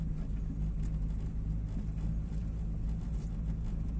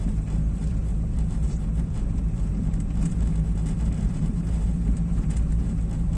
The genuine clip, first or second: first